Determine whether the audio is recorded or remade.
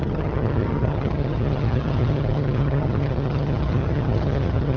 remade